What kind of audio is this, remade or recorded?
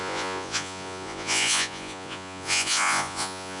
remade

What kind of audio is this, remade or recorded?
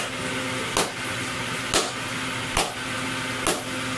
recorded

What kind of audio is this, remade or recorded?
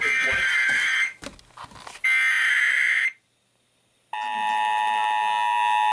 recorded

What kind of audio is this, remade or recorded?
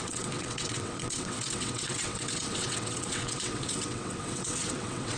remade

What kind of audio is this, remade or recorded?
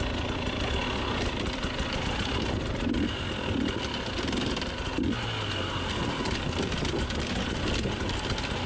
recorded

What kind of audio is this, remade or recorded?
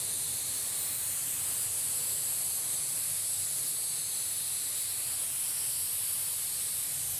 recorded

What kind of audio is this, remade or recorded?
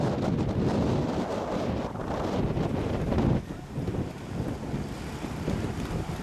recorded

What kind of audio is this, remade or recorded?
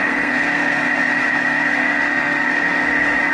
remade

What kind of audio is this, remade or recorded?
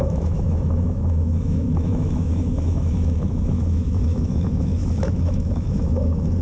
remade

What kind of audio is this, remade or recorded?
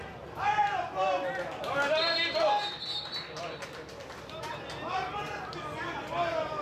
recorded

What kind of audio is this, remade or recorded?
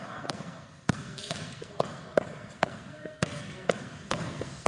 remade